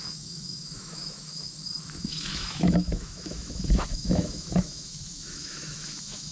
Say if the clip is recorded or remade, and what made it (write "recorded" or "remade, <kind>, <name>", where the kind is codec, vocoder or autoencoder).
remade, autoencoder, DAC-VAE